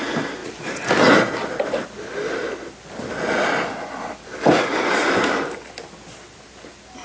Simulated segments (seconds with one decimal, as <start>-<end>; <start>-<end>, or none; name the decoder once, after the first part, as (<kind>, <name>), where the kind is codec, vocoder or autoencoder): none